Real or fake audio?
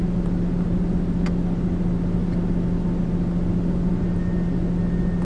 real